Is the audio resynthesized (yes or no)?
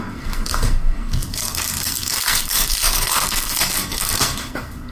yes